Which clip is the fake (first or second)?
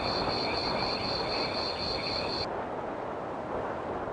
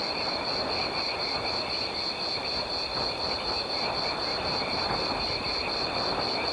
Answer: second